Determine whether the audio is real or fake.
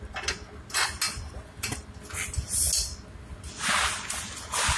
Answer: real